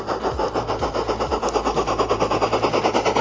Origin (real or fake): real